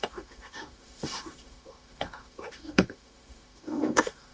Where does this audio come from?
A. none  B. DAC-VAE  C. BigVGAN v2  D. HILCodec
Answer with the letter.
B